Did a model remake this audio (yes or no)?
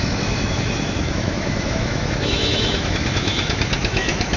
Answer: yes